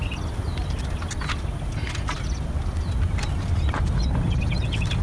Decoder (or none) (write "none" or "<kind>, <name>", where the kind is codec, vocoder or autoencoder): none